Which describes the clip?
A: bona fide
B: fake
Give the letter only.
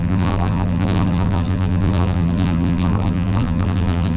B